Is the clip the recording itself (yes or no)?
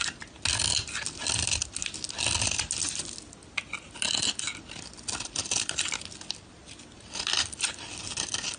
yes